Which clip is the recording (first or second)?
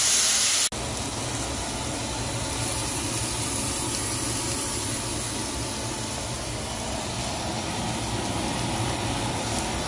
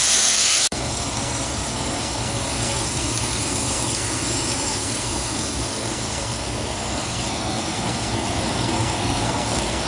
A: first